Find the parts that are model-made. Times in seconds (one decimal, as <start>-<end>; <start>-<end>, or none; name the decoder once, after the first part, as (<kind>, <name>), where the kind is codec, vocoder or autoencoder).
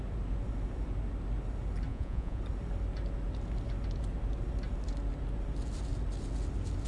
1.9-2.4 (vocoder, Vocos)